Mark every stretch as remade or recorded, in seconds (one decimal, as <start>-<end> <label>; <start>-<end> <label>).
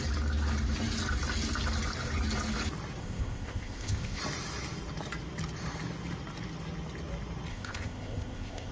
0.0-3.0 recorded; 3.0-4.2 remade; 4.2-7.5 recorded; 7.5-8.7 remade